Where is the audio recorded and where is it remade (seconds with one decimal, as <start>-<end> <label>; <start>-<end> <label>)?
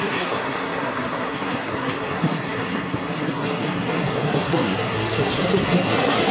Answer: 0.0-6.3 remade